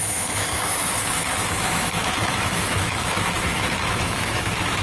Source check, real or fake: fake